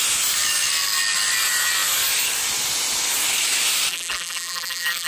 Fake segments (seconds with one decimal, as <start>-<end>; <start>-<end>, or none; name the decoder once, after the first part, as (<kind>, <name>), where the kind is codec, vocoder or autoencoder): 3.9-5.1 (vocoder, BigVGAN v2)